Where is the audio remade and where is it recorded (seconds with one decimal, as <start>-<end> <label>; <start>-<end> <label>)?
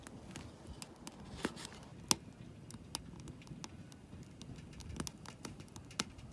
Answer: 0.0-6.3 recorded